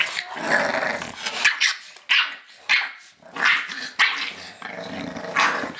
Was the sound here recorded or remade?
recorded